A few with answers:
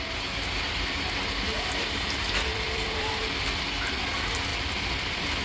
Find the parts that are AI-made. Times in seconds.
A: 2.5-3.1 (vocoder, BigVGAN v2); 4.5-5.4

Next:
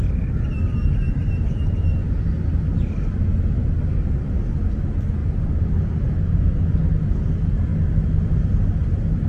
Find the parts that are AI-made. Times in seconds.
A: none

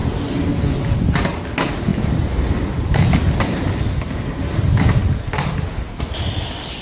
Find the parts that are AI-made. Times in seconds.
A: none

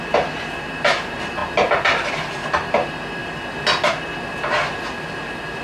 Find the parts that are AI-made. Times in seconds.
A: none

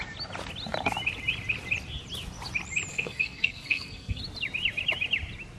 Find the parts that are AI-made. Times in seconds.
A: 2.9-4.2 (codec, SNAC)

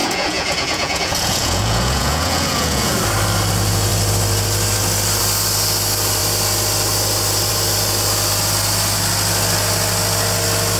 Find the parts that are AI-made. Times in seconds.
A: 0.0-2.9 (vocoder, Vocos)

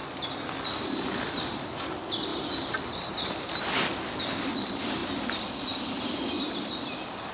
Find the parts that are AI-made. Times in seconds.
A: 2.3-3.1 (vocoder, BigVGAN v2)

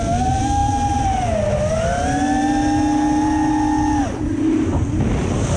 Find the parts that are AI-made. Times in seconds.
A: none